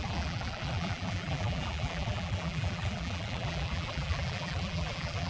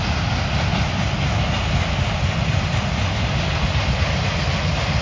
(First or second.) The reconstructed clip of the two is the first